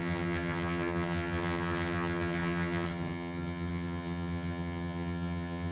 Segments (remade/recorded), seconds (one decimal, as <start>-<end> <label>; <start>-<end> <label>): 0.0-5.7 remade